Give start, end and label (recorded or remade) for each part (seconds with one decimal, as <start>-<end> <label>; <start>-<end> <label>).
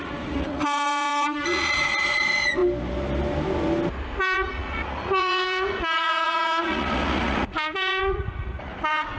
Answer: 0.0-2.6 remade; 2.6-4.2 recorded; 4.2-9.2 remade